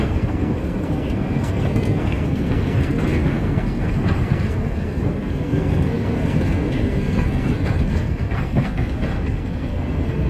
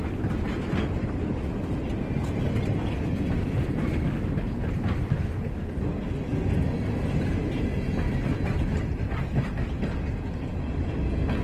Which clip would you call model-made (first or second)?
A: first